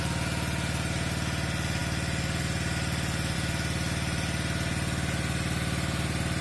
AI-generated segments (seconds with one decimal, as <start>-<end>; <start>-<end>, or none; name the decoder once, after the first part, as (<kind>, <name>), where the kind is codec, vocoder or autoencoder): none

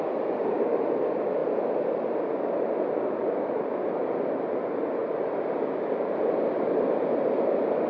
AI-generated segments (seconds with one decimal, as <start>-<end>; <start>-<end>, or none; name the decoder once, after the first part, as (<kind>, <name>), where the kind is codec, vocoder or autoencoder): none

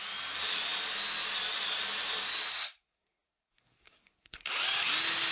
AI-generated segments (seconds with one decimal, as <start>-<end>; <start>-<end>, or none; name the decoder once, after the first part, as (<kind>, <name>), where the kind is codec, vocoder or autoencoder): 2.5-4.5 (codec, SNAC)

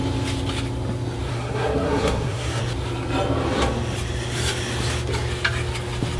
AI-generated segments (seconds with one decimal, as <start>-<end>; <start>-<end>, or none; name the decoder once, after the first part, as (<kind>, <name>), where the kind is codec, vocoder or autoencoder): 1.3-2.6 (codec, SNAC)